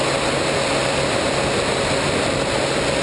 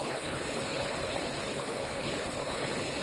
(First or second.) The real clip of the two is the first